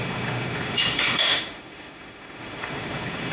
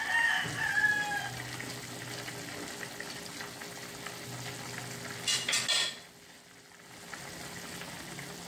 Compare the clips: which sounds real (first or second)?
second